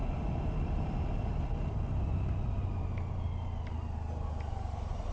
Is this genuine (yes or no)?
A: yes